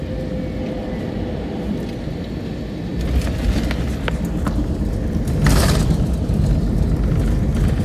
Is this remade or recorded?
recorded